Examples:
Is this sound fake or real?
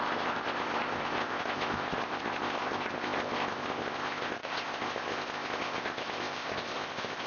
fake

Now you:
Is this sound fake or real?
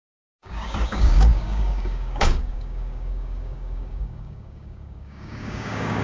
fake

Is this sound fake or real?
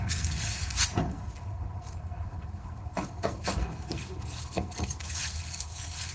fake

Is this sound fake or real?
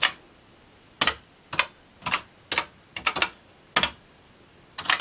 real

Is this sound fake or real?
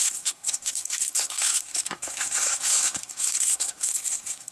fake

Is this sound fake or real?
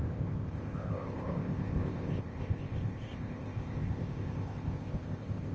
fake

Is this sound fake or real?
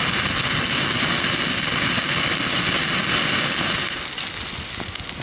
real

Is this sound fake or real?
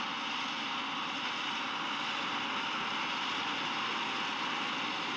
real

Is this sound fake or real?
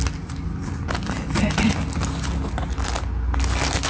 real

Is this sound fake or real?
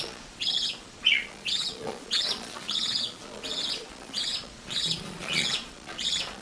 fake